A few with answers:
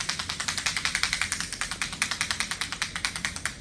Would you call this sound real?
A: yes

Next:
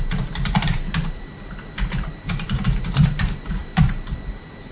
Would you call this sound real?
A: no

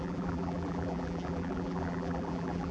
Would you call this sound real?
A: no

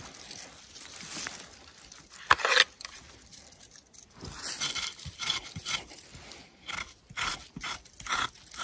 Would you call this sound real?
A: yes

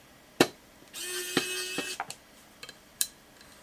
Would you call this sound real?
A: yes